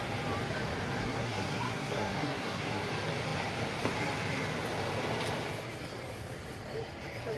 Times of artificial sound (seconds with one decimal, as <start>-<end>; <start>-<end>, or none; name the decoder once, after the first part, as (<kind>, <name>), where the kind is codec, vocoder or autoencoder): 1.0-2.9 (codec, SNAC)